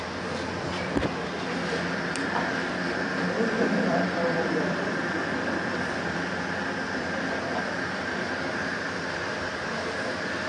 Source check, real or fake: fake